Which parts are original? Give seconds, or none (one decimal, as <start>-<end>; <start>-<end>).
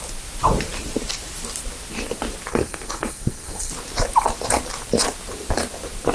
0.0-2.5; 3.7-6.1